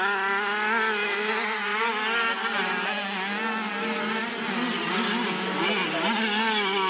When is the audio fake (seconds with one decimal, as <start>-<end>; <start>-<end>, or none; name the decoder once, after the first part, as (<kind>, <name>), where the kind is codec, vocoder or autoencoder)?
none